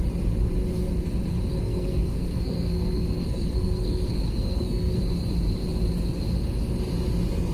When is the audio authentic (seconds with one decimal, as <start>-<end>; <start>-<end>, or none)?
0.0-1.5; 5.0-7.5